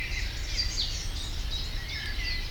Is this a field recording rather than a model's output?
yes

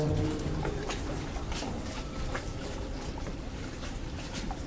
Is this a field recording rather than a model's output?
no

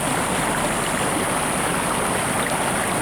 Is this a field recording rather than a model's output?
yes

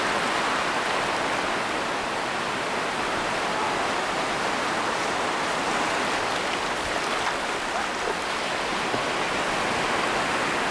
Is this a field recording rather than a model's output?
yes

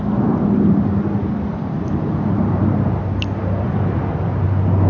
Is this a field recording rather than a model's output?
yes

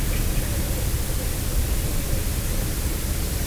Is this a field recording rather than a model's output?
no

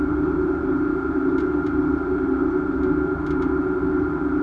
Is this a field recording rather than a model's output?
yes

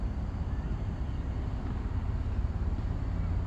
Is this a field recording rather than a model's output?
yes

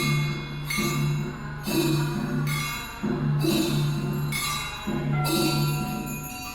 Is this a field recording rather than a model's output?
yes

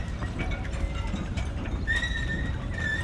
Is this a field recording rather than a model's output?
no